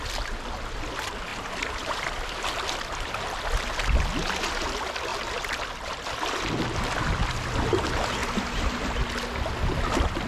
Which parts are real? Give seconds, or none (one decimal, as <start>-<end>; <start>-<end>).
0.0-1.3; 3.1-5.1; 6.4-10.3